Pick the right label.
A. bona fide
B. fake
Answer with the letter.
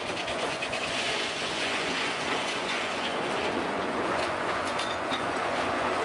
B